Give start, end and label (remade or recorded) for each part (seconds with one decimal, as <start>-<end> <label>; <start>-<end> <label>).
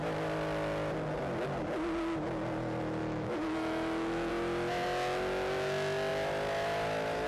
0.0-3.0 recorded; 3.0-4.3 remade; 4.3-7.3 recorded